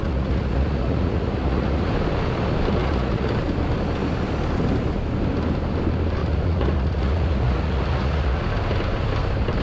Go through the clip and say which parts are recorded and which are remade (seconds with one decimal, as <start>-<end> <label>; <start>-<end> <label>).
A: 0.0-1.9 remade; 1.9-2.8 recorded; 2.8-3.3 remade; 3.3-6.2 recorded; 6.2-8.4 remade; 8.4-9.6 recorded